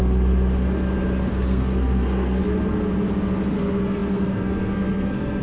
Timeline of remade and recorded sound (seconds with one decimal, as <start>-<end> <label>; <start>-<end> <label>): 0.0-1.3 recorded; 1.3-2.4 remade; 2.4-3.5 recorded; 3.5-5.4 remade